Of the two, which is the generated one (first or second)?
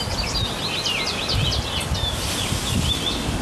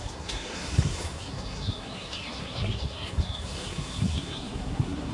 second